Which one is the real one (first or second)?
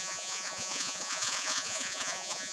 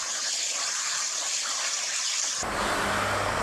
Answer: second